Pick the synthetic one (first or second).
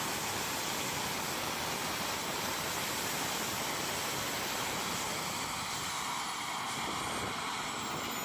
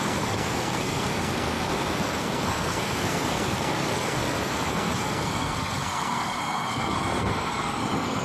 second